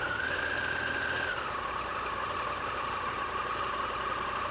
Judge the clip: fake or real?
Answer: real